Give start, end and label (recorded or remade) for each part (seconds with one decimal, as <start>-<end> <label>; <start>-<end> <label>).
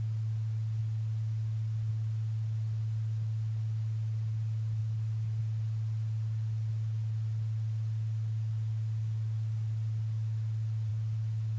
0.0-11.6 recorded